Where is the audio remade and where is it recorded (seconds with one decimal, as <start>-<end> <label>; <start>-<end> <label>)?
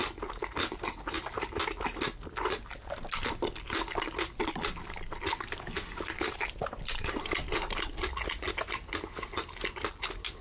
0.0-10.4 recorded